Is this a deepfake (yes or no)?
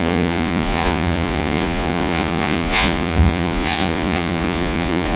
yes